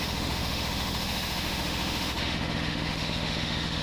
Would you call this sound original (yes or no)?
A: no